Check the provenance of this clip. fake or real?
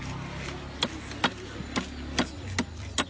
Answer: real